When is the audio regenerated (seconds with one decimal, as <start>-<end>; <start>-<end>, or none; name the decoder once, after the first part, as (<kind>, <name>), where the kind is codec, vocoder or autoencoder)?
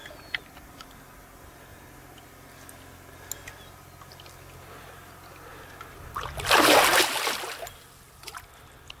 none